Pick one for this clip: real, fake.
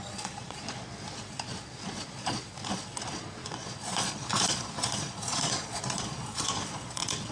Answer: fake